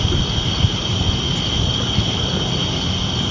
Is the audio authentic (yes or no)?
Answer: yes